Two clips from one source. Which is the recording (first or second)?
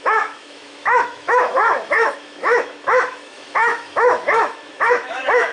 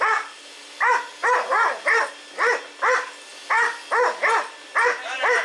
second